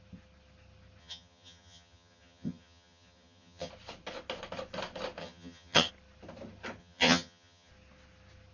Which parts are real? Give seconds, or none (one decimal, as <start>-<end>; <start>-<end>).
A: 0.0-1.0; 3.7-5.2; 5.9-6.8; 7.7-8.5